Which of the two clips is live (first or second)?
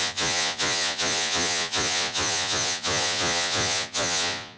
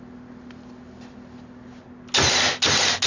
second